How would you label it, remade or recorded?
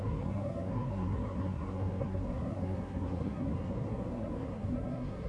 remade